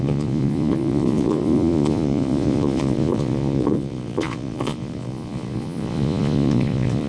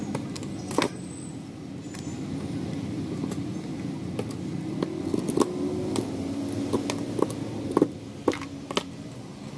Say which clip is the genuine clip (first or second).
second